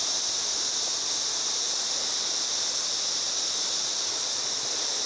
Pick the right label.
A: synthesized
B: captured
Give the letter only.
B